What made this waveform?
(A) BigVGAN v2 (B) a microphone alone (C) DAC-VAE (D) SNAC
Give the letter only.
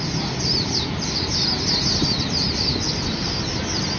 B